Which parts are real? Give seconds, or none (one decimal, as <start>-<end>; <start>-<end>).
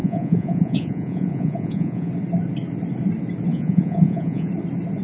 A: 2.1-3.5; 4.5-5.0